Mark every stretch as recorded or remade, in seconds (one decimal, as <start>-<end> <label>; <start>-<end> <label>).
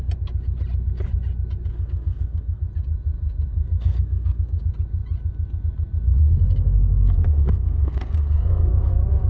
0.0-1.7 recorded; 1.7-2.6 remade; 2.6-3.5 recorded; 3.5-4.6 remade; 4.6-6.2 recorded; 6.2-8.9 remade; 8.9-9.3 recorded